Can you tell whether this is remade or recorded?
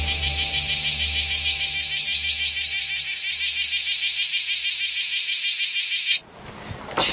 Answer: recorded